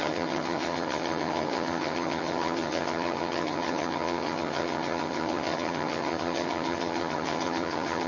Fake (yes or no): yes